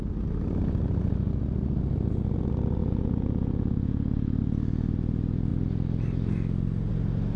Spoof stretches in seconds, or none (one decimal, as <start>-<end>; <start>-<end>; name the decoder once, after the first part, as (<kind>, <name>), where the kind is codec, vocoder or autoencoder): 2.8-4.4 (vocoder, Vocos)